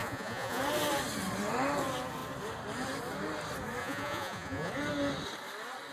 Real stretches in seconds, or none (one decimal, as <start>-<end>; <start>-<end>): 0.6-3.8; 4.7-5.9